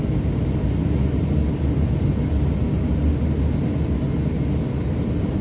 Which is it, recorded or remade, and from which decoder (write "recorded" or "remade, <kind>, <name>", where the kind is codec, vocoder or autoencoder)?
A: recorded